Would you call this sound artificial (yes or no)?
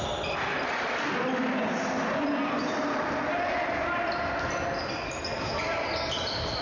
no